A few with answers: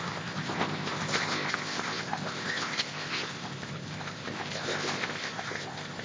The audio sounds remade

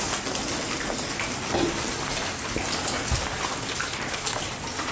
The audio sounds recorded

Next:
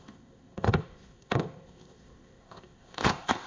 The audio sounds remade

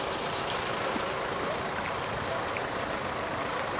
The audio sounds recorded